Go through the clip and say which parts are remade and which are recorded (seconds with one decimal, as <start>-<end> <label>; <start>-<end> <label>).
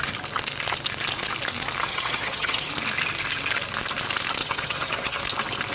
0.0-1.9 recorded; 1.9-2.7 remade; 2.7-4.4 recorded; 4.4-5.2 remade; 5.2-5.7 recorded